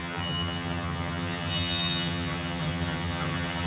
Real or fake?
fake